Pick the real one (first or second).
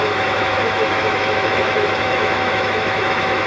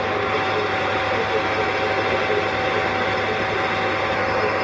second